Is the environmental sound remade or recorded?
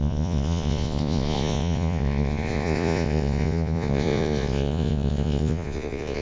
remade